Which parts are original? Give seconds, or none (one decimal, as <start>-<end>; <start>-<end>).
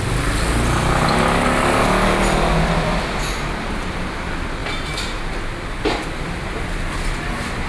0.0-7.7